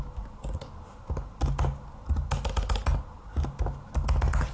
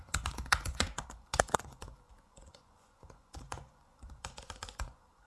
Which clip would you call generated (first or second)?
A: second